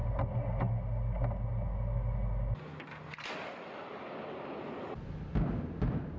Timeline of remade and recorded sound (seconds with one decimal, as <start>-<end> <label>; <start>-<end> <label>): 0.0-6.2 recorded